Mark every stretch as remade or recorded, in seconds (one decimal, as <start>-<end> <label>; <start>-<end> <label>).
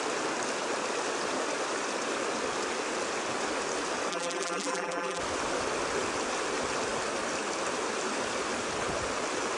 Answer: 0.0-4.1 recorded; 4.1-5.2 remade; 5.2-9.6 recorded